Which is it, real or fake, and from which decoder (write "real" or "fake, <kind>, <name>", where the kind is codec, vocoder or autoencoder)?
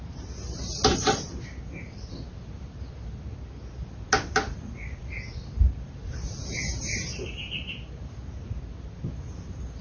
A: real